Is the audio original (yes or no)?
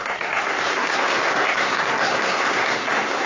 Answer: no